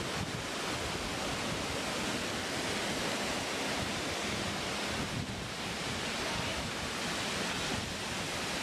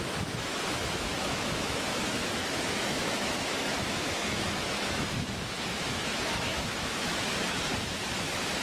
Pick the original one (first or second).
first